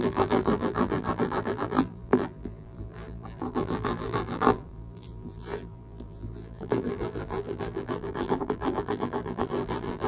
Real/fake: fake